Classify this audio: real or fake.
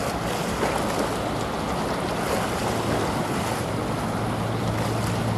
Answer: real